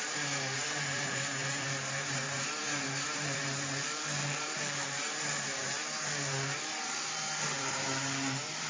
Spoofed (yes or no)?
yes